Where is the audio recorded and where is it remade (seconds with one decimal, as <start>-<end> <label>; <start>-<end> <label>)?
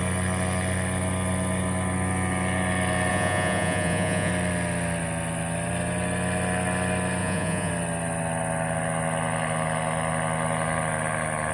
0.0-3.1 recorded; 3.1-4.3 remade; 4.3-7.2 recorded; 7.2-7.7 remade; 7.7-11.5 recorded